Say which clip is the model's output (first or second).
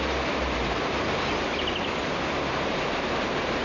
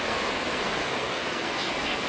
second